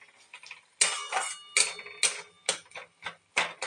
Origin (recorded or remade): recorded